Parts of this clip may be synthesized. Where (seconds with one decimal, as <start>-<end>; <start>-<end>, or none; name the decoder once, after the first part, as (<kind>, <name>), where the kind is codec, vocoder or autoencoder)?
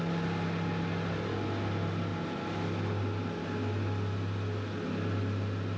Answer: none